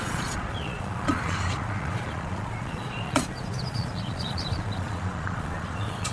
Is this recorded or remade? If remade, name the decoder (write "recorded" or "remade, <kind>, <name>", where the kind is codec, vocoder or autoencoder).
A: remade, vocoder, Vocos